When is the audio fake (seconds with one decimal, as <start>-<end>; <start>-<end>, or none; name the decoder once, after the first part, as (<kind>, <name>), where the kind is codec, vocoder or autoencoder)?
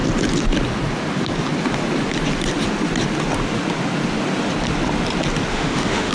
5.5-6.1 (autoencoder, DAC-VAE)